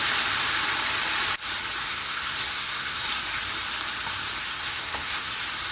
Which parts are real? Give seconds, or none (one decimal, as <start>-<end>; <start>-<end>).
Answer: 0.0-1.9; 3.0-4.5; 5.3-5.7

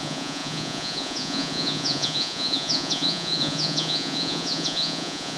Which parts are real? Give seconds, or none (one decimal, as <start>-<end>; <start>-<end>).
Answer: none

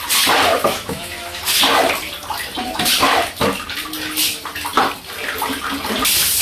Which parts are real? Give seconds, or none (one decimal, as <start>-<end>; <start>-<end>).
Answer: 0.0-0.5; 1.4-6.4